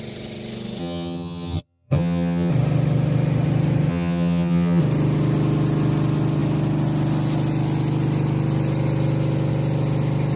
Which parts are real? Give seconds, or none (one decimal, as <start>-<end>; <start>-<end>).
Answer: 0.0-0.8; 2.5-3.9; 4.8-10.4

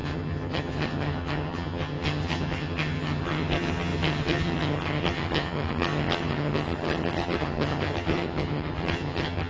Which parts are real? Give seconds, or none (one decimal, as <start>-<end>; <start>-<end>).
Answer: none